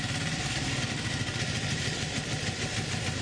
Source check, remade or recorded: recorded